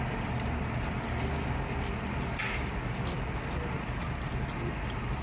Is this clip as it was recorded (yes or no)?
yes